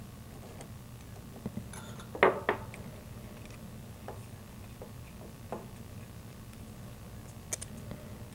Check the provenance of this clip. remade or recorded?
recorded